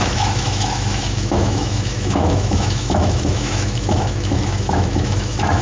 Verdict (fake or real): fake